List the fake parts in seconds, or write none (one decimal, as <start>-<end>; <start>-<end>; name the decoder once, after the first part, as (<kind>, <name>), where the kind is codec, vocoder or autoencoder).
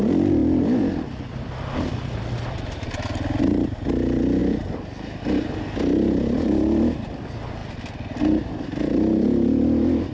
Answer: none